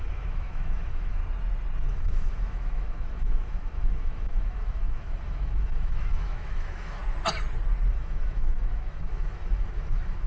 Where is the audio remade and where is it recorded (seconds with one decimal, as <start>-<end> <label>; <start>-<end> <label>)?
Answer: 0.0-1.2 remade; 1.2-1.9 recorded; 1.9-7.0 remade; 7.0-7.9 recorded; 7.9-10.3 remade